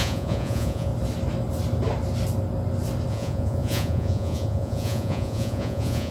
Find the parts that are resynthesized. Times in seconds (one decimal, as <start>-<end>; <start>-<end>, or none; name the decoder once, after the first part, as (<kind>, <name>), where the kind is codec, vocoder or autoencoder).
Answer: 0.0-0.9 (vocoder, Vocos); 3.1-6.1